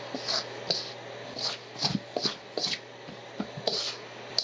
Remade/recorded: recorded